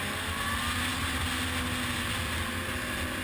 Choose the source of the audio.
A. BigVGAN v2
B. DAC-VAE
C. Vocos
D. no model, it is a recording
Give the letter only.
D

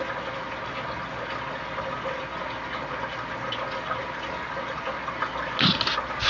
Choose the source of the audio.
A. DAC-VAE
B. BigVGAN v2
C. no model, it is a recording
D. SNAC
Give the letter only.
C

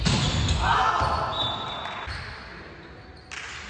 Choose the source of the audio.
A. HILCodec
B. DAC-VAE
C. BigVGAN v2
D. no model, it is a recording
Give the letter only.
D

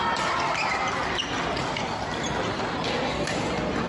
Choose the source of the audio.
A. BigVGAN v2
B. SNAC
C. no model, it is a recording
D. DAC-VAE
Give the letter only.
C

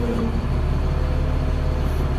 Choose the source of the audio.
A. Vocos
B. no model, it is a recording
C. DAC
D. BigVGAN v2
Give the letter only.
D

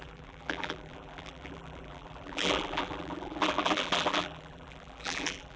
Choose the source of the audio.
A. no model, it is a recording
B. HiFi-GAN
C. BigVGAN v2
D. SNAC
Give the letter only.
C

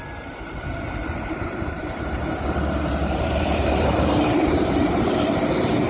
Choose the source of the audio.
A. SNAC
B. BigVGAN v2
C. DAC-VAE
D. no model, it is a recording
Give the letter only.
B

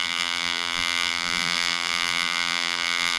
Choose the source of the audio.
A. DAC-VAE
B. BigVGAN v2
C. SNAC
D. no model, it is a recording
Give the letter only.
B